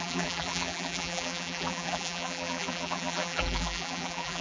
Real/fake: fake